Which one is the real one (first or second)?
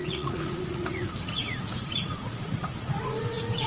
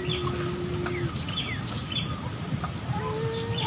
second